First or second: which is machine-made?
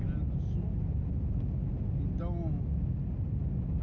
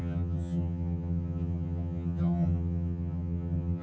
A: second